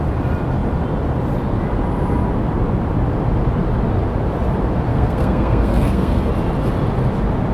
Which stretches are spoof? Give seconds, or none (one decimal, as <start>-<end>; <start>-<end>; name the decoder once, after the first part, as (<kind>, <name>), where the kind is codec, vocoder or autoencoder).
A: 4.9-6.3 (codec, SNAC)